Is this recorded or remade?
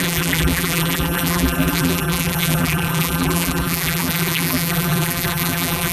remade